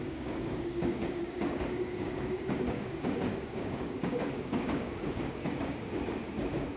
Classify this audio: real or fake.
fake